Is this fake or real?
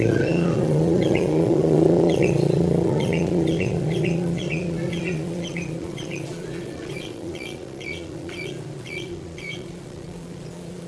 fake